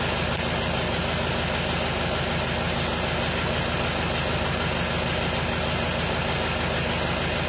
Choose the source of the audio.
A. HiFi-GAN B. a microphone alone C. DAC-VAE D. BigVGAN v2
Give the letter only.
B